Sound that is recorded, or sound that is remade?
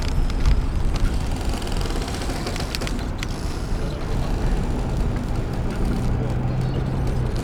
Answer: recorded